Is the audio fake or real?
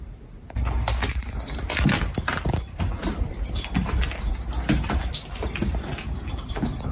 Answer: real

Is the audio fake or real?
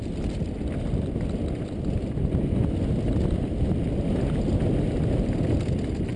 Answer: real